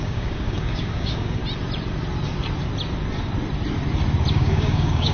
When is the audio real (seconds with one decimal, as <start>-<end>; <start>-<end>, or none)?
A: 1.4-4.3